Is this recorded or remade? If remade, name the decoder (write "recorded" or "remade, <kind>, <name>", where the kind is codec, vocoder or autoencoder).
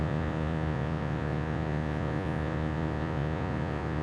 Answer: remade, vocoder, Vocos